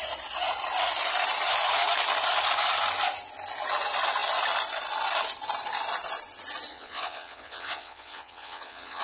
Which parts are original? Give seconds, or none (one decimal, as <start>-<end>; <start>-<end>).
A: 0.0-6.7

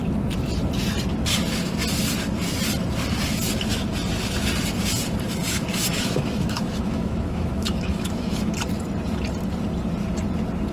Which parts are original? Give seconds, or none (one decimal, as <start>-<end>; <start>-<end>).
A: 0.0-5.9; 8.5-10.7